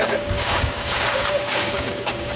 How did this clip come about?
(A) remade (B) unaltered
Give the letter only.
A